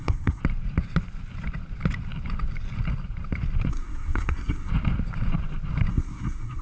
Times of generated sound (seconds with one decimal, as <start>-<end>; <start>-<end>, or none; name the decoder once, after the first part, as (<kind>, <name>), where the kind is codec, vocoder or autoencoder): 0.0-0.4 (codec, SNAC); 3.7-4.7; 5.9-6.6